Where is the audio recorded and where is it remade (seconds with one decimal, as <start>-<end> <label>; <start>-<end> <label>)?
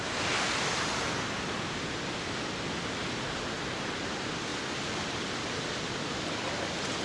0.0-7.0 recorded